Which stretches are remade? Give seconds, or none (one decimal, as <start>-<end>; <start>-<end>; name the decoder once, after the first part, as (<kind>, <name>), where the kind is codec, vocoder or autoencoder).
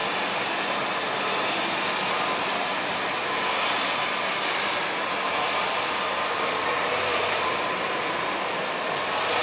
none